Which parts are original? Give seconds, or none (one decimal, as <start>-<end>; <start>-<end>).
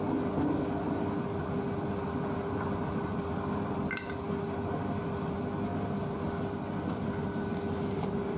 0.0-8.4